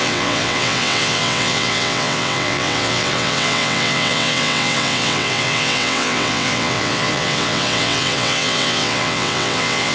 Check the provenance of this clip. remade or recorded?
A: remade